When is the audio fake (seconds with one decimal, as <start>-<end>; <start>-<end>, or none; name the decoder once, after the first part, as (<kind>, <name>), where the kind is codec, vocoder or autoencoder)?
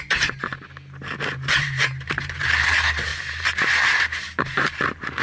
0.0-0.5 (vocoder, BigVGAN v2); 1.2-5.2